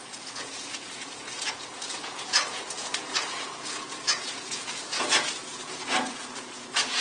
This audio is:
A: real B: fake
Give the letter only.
B